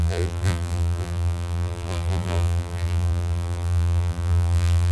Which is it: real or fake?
fake